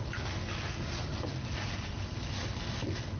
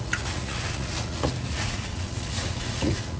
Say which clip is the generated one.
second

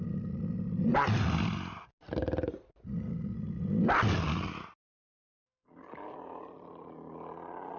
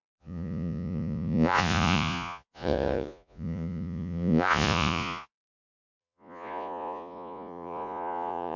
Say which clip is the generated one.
second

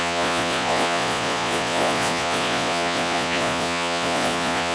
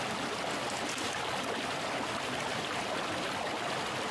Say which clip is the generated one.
first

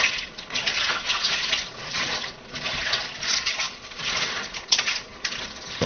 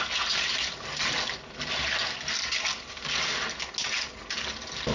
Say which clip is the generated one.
first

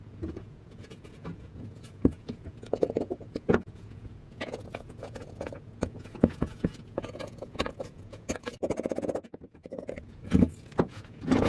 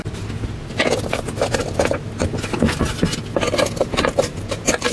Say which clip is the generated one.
first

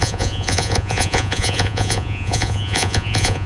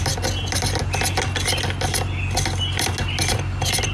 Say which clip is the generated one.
first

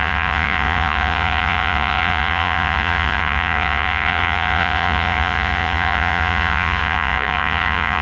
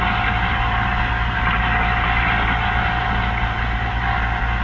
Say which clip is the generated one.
first